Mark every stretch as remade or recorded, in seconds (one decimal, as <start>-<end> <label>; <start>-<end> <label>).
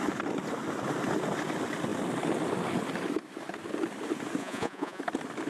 0.0-4.4 recorded; 4.4-5.0 remade; 5.0-5.5 recorded